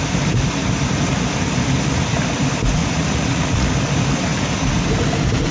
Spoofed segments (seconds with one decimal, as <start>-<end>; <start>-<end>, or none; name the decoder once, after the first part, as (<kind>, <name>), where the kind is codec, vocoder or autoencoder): 2.8-3.7 (vocoder, Vocos)